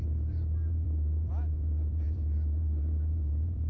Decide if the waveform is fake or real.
fake